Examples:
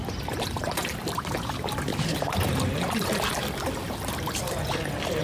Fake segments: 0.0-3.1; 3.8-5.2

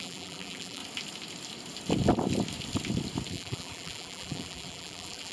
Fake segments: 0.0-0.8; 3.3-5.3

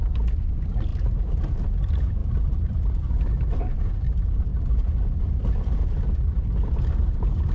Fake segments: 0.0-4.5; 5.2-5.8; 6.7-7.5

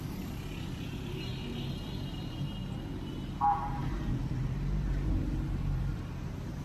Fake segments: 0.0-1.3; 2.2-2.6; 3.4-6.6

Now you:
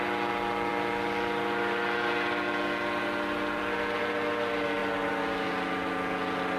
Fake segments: 0.7-4.0; 4.8-5.5

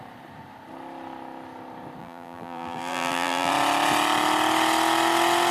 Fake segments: 2.0-3.5